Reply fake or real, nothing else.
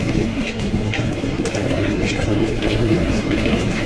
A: fake